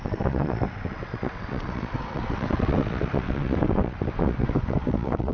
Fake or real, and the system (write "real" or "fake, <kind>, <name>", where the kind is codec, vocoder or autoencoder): fake, vocoder, WaveNeXt